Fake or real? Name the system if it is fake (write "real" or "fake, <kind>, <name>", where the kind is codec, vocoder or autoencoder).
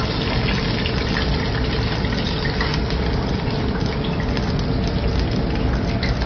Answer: real